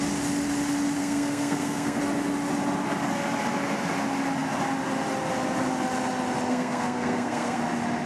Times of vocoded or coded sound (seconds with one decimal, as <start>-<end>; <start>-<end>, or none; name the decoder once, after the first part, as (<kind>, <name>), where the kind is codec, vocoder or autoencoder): 1.0-2.0 (codec, SNAC); 6.5-7.6